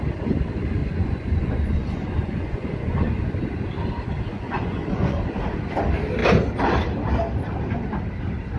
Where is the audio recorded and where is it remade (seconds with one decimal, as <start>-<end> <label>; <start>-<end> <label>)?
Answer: 0.0-0.8 recorded; 0.8-3.1 remade; 3.1-4.3 recorded; 4.3-5.2 remade; 5.2-8.6 recorded